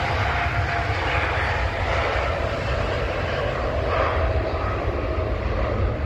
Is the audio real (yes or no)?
yes